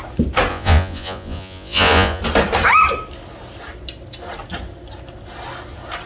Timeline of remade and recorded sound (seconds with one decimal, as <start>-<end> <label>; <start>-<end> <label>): 0.0-0.5 recorded; 0.5-2.2 remade; 2.2-6.1 recorded